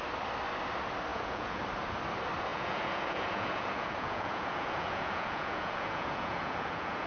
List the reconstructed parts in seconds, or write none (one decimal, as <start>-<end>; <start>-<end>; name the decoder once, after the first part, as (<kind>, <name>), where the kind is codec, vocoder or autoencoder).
1.1-1.6 (vocoder, Vocos); 2.5-7.1